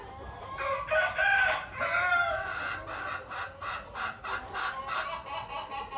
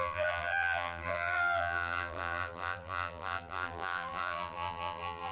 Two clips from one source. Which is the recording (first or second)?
first